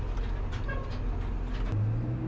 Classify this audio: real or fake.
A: real